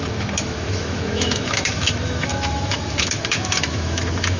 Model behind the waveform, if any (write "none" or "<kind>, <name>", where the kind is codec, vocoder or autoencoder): autoencoder, DAC-VAE